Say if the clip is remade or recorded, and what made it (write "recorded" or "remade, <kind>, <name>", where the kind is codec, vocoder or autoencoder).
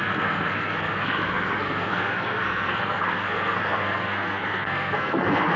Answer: remade, codec, SNAC